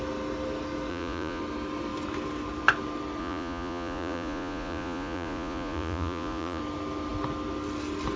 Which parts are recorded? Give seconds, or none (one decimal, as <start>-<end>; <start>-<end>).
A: 0.0-0.9; 1.4-3.2; 6.6-8.2